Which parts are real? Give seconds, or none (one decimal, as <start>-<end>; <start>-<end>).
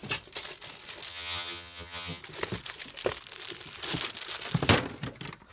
0.0-1.1; 2.2-5.5